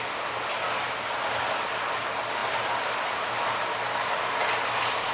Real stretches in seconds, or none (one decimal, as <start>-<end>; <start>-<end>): 0.0-5.1